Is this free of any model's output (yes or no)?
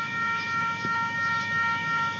no